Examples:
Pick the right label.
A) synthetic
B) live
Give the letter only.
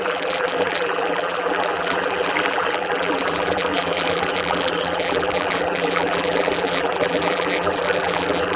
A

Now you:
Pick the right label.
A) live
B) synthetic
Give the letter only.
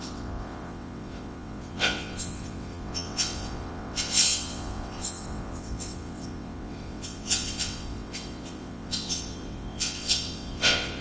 B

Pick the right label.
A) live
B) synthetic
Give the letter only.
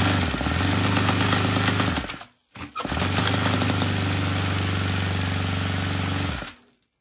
A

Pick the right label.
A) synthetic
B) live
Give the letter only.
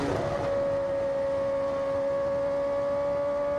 B